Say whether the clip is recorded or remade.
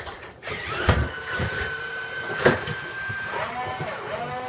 remade